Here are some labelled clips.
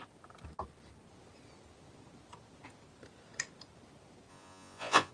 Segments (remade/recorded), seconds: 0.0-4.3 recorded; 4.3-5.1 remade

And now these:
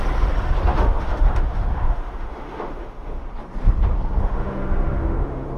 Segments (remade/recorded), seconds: 0.0-0.7 recorded; 0.7-3.2 remade; 3.2-4.2 recorded; 4.2-5.6 remade

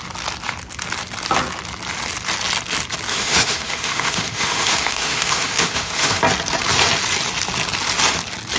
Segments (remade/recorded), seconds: 0.0-3.1 recorded; 3.1-6.2 remade; 6.2-8.6 recorded

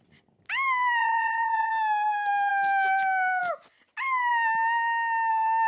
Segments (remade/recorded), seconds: 0.0-1.0 recorded; 1.0-1.7 remade; 1.7-5.7 recorded

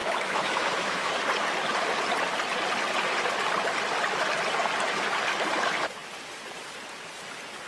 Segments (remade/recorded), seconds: 0.0-1.1 remade; 1.1-7.7 recorded

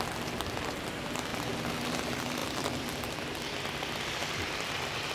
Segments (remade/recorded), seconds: 0.0-2.4 recorded; 2.4-3.4 remade; 3.4-4.2 recorded; 4.2-5.1 remade

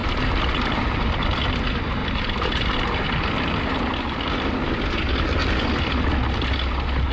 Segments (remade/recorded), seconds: 0.0-1.4 remade; 1.4-2.0 recorded; 2.0-3.3 remade; 3.3-5.4 recorded; 5.4-6.4 remade; 6.4-7.1 recorded

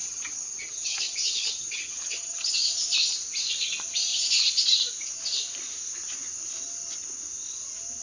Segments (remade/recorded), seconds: 0.0-2.5 remade; 2.5-8.0 recorded